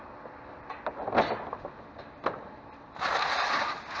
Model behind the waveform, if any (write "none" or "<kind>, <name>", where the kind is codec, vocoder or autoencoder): none